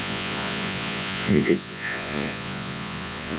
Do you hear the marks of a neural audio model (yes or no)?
yes